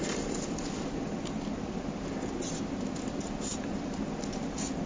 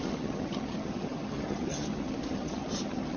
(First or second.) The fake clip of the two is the second